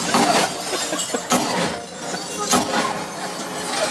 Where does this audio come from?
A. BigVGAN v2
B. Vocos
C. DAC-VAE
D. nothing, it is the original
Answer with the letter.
D